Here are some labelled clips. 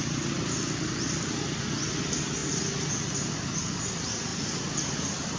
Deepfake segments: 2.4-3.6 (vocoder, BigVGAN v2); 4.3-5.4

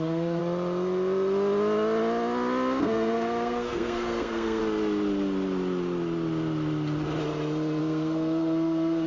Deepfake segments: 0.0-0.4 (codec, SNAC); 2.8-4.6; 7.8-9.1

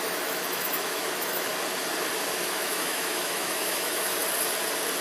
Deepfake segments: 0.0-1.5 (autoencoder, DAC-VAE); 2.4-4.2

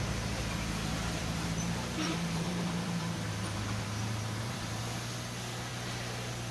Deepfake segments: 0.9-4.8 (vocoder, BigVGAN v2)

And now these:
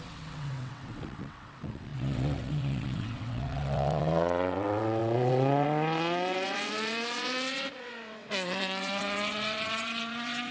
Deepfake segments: 0.0-10.5 (vocoder, WaveNeXt)